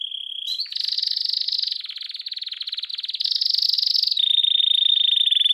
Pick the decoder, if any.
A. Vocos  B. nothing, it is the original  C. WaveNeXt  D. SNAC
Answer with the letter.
B